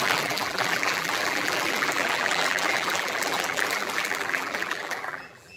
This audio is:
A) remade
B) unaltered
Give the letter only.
A